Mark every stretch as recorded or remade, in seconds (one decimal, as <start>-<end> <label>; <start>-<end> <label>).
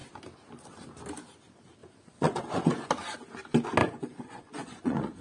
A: 0.0-1.8 recorded; 1.8-2.9 remade; 2.9-3.8 recorded; 3.8-5.2 remade